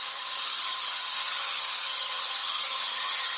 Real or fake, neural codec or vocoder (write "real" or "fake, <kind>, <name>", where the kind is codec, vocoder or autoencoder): fake, vocoder, HiFi-GAN